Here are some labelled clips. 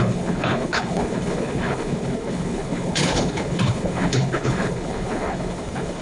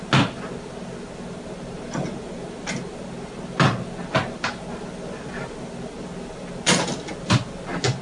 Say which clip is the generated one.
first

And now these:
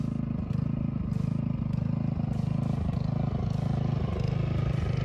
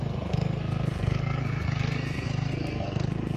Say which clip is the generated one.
second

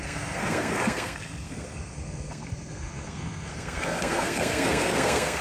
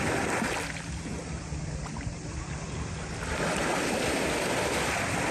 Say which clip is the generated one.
first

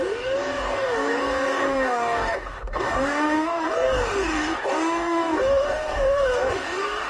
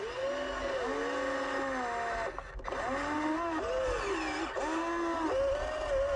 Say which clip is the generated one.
first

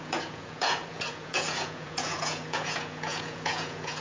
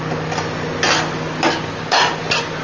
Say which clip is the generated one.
first